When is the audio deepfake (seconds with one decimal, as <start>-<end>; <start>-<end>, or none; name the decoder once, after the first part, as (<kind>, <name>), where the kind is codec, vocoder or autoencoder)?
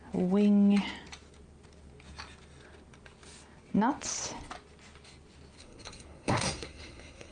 5.6-7.3 (codec, SNAC)